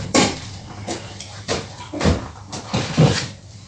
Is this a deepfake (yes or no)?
yes